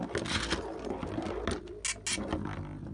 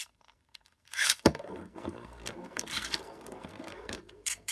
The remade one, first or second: second